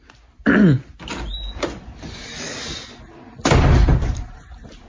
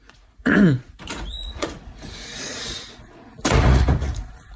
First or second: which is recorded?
first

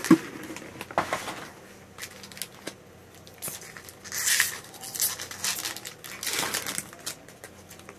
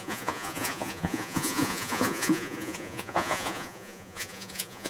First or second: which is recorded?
first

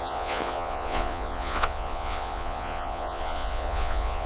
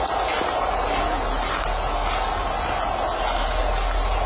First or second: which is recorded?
second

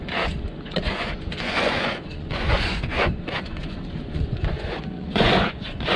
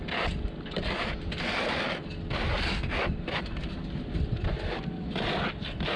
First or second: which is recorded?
second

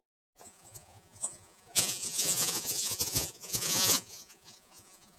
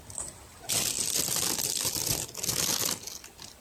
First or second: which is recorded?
second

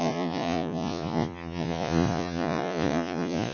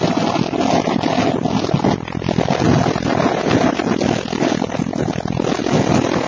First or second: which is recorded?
second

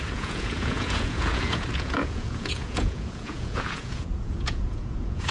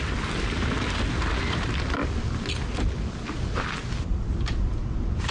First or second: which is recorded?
second